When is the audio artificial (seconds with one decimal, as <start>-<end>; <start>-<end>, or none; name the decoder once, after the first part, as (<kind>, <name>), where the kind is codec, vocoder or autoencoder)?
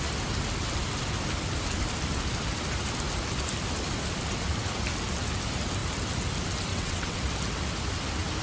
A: 6.7-7.2 (vocoder, WaveNeXt)